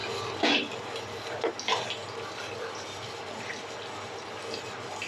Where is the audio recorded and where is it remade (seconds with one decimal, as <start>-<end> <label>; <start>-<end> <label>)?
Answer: 0.0-0.5 remade; 0.5-5.1 recorded